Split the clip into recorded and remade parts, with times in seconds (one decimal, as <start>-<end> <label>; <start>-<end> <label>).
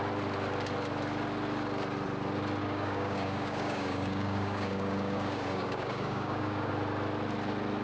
0.0-2.6 recorded; 2.6-6.7 remade; 6.7-7.8 recorded